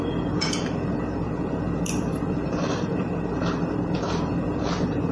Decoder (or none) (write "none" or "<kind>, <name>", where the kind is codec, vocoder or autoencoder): vocoder, BigVGAN v2